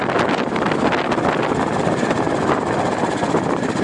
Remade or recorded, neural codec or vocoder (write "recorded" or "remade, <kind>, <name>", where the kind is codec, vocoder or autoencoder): recorded